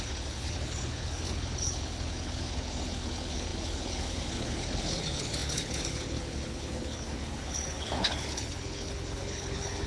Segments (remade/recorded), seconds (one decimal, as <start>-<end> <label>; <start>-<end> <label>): 0.0-9.9 remade